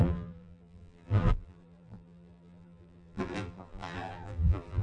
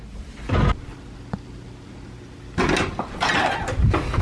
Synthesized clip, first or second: first